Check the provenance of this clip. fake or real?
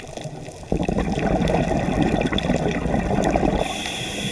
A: real